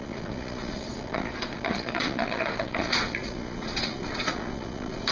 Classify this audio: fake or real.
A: fake